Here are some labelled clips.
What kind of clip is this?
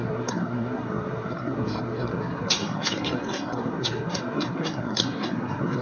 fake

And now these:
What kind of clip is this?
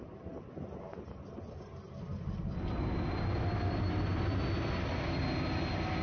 real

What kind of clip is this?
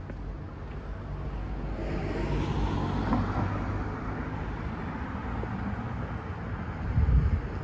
real